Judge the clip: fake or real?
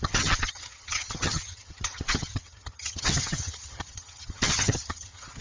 fake